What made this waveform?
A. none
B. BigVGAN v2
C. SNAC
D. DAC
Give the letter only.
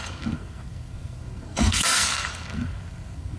C